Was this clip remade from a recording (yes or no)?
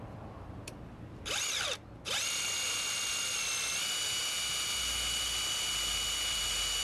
no